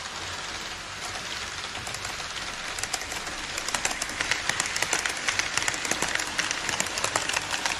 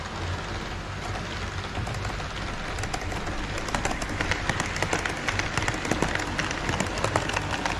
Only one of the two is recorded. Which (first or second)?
second